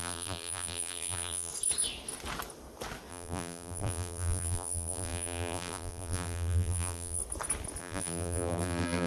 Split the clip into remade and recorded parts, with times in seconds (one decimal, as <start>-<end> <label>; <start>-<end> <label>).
0.0-1.5 remade; 1.5-3.1 recorded; 3.1-7.2 remade; 7.2-7.8 recorded; 7.8-9.1 remade

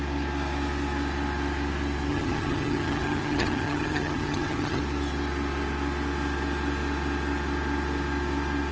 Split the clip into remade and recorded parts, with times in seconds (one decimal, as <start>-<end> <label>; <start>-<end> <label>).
0.0-2.1 recorded; 2.1-4.8 remade; 4.8-8.7 recorded

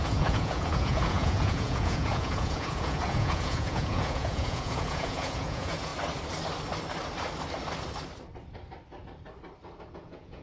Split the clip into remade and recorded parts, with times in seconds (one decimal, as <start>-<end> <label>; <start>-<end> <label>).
0.0-5.9 remade; 5.9-9.9 recorded; 9.9-10.4 remade

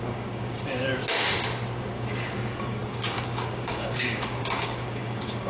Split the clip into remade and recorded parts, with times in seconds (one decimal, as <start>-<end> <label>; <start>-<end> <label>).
0.0-0.9 remade; 0.9-1.8 recorded; 1.8-5.5 remade

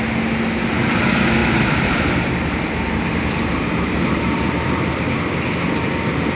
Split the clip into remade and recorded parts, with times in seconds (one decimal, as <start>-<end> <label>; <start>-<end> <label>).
0.0-1.4 recorded; 1.4-4.9 remade; 4.9-6.3 recorded

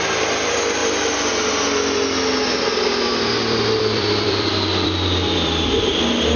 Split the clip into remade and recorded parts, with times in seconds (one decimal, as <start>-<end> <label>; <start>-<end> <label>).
0.0-0.8 recorded; 0.8-1.3 remade; 1.3-3.1 recorded; 3.1-5.9 remade; 5.9-6.4 recorded